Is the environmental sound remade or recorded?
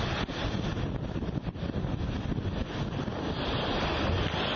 recorded